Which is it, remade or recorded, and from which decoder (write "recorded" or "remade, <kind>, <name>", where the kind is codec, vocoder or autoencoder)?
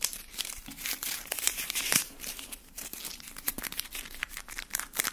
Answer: remade, vocoder, BigVGAN v2